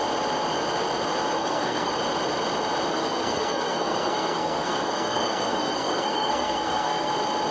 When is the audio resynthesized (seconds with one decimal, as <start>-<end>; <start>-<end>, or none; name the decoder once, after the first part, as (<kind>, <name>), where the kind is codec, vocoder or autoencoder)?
1.4-1.9 (codec, SNAC); 2.9-7.1